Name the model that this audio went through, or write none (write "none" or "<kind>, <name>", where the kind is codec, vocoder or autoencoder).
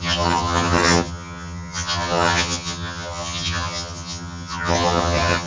vocoder, HiFi-GAN